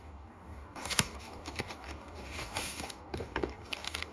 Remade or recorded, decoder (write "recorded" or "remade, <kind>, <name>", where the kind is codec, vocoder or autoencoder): remade, codec, DAC